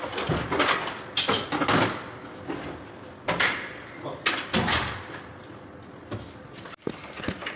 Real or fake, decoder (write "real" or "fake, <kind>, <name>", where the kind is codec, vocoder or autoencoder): real